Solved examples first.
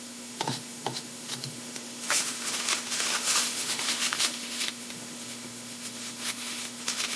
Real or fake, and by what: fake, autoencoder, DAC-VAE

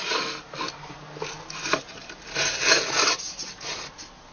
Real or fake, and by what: real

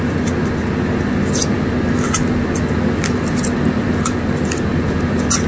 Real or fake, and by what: real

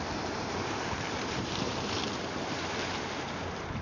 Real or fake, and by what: fake, vocoder, BigVGAN v2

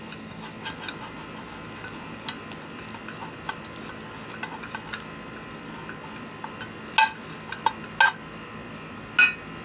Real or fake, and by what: real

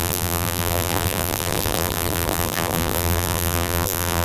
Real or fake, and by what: fake, vocoder, BigVGAN v2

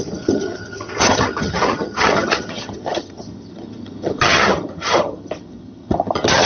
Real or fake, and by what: fake, vocoder, HiFi-GAN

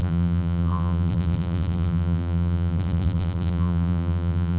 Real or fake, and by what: fake, vocoder, BigVGAN v2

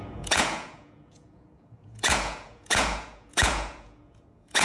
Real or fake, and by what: fake, vocoder, Vocos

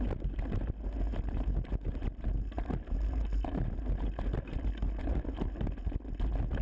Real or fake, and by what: real